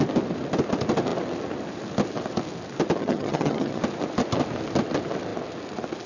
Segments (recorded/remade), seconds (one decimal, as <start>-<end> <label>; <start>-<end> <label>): 0.0-3.0 recorded; 3.0-3.8 remade; 3.8-6.1 recorded